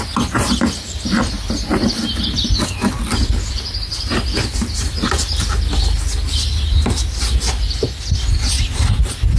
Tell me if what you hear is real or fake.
real